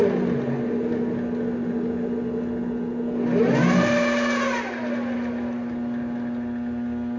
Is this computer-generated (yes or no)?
no